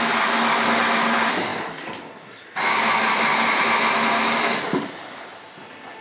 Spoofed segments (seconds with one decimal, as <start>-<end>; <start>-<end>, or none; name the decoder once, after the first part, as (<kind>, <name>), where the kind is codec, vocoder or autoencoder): none